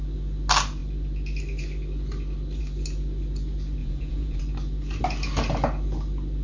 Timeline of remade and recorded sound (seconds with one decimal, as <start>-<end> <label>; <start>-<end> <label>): 0.0-3.8 recorded; 3.8-4.4 remade; 4.4-6.4 recorded